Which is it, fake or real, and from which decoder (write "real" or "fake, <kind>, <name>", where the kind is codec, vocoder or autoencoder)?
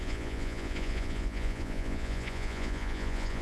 fake, vocoder, Vocos